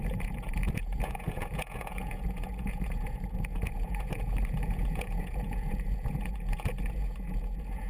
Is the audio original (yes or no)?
no